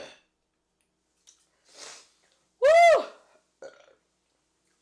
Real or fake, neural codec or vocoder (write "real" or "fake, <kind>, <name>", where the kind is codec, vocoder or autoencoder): real